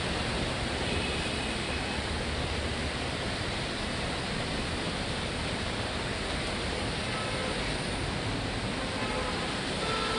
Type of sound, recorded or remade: recorded